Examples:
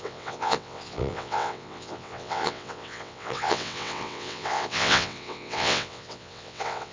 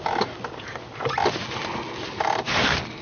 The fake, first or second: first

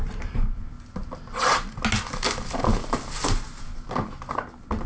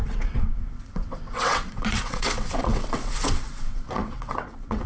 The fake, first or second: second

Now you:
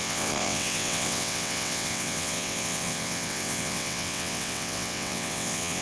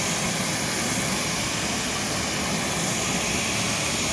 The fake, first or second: first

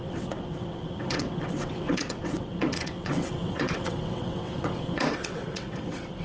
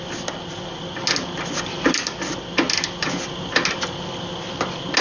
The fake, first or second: first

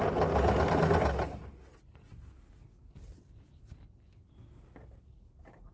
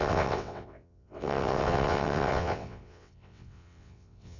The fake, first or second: second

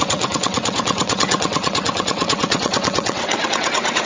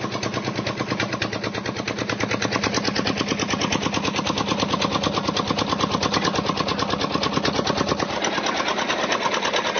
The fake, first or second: first